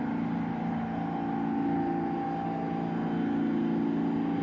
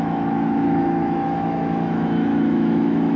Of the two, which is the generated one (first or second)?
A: second